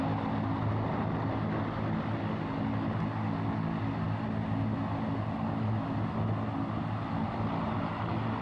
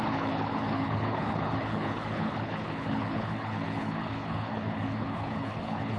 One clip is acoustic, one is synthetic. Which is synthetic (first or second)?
second